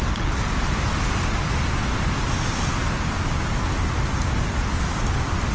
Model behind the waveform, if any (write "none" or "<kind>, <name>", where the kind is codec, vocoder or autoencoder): none